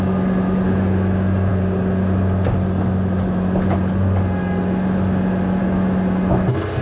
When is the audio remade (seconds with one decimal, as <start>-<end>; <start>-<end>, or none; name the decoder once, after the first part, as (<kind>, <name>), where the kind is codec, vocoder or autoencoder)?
none